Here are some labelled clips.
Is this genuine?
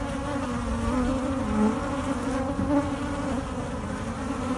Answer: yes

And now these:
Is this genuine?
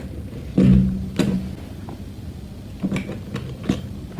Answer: yes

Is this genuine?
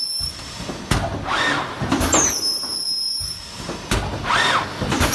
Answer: yes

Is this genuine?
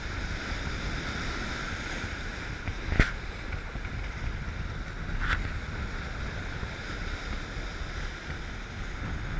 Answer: yes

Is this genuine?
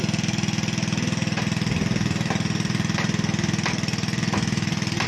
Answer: yes